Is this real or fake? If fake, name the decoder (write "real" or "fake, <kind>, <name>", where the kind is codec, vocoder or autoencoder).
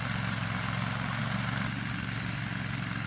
real